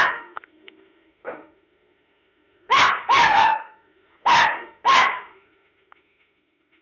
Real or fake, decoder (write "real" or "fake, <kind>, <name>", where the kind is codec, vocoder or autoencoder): fake, autoencoder, DAC-VAE